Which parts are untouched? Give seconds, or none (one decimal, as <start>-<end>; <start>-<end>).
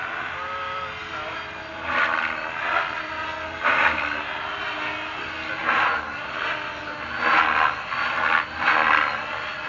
0.0-9.7